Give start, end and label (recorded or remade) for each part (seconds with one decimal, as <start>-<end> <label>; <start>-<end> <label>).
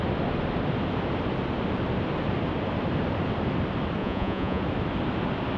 0.0-4.0 recorded; 4.0-4.6 remade; 4.6-5.6 recorded